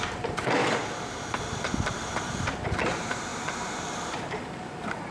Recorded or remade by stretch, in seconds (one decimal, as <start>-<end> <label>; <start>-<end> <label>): 0.0-0.6 remade; 0.6-1.4 recorded; 1.4-2.0 remade; 2.0-2.8 recorded; 2.8-5.1 remade